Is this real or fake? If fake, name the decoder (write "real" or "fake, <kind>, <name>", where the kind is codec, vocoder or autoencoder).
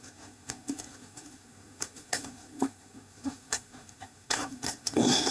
fake, codec, SNAC